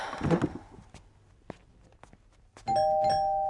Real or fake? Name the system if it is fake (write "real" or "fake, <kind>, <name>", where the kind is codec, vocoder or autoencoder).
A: real